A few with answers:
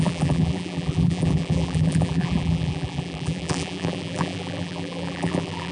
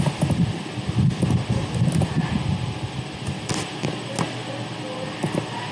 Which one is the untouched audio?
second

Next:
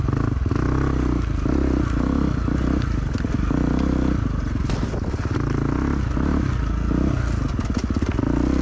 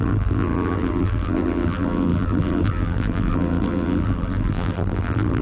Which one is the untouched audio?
first